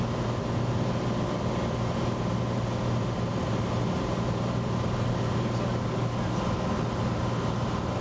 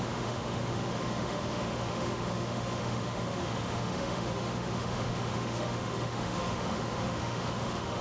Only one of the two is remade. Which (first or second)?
second